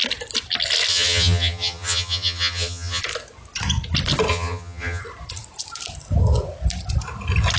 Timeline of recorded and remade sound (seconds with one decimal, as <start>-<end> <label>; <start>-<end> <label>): 0.0-0.9 recorded; 0.9-3.0 remade; 3.0-4.3 recorded; 4.3-5.0 remade; 5.0-7.6 recorded